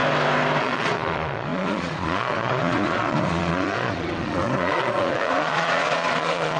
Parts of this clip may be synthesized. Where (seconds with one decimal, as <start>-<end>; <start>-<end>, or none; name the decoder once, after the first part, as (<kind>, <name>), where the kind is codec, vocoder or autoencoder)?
0.6-6.6 (vocoder, Vocos)

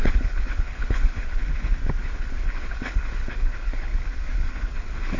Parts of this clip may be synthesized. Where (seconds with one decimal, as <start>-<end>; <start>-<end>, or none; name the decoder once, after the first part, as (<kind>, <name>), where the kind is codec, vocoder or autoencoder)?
0.0-1.4 (codec, HILCodec); 2.0-3.9; 4.5-5.2

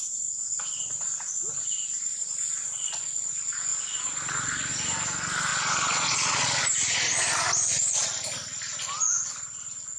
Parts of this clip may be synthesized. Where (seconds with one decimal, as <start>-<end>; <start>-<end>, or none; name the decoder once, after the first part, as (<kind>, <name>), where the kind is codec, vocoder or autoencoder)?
2.1-3.3 (vocoder, Vocos); 5.5-6.6

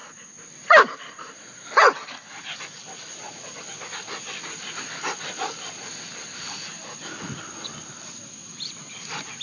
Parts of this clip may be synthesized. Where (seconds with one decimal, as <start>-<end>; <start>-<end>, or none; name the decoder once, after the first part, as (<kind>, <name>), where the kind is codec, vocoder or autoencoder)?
none

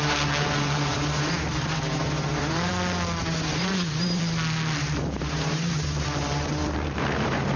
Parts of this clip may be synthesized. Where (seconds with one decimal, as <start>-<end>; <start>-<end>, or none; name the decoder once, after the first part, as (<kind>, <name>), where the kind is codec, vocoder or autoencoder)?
0.0-2.7 (vocoder, BigVGAN v2); 3.2-4.2; 4.8-7.6